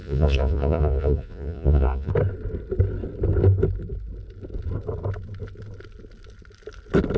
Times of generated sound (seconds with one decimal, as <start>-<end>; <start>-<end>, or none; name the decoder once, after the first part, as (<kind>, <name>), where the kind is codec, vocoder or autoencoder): 0.0-2.1 (vocoder, Vocos)

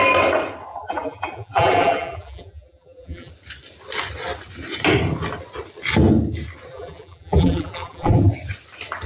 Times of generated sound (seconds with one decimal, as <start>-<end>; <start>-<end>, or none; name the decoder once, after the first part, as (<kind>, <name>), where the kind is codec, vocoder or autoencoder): 0.7-3.3 (vocoder, BigVGAN v2); 6.7-8.3

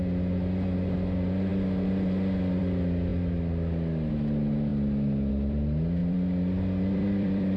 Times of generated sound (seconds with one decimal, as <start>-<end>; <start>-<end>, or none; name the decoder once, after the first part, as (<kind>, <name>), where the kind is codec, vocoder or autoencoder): 6.0-7.6 (vocoder, BigVGAN v2)

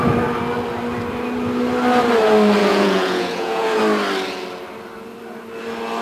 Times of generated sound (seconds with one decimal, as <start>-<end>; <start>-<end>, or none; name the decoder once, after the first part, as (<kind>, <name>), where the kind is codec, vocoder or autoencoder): 2.6-3.8 (vocoder, Vocos)

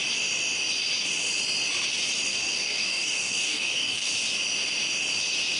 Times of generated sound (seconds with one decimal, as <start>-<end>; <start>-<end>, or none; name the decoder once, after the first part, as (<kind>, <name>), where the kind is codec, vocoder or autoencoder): 2.3-4.1 (codec, DAC)

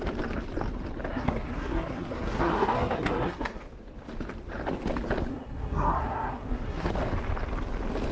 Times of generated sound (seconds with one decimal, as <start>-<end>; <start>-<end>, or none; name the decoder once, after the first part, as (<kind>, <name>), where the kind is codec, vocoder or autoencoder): 1.1-3.6 (codec, SNAC); 5.3-6.9

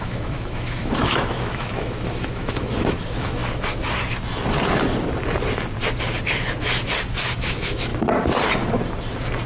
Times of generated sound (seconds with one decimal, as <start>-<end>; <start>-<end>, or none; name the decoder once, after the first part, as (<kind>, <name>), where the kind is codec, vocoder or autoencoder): 0.0-3.4 (autoencoder, DAC-VAE); 7.4-7.9